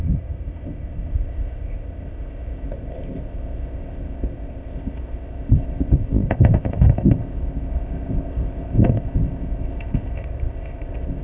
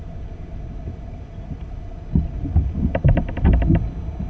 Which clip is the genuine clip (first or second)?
second